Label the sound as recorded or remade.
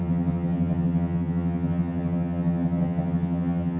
remade